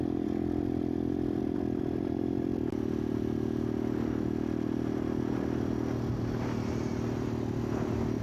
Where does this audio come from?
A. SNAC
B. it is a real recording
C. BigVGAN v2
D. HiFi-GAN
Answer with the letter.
B